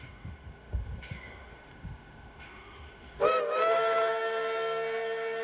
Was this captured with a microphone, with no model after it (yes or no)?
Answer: no